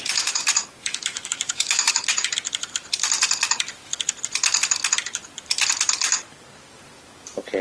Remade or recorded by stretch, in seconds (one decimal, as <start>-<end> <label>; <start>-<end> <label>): 0.0-0.8 recorded; 0.8-2.0 remade; 2.0-7.6 recorded